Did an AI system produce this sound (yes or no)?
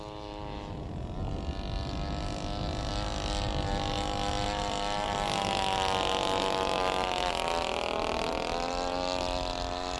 no